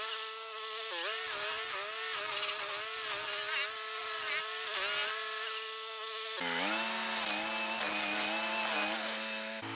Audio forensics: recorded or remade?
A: recorded